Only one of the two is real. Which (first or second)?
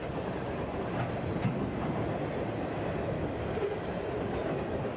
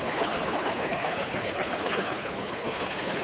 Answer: first